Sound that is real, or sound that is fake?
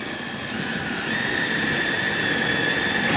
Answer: real